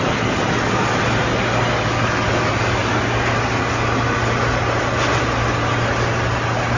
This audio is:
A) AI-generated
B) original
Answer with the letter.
B